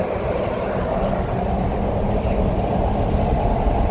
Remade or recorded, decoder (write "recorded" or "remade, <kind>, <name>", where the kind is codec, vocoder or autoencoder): recorded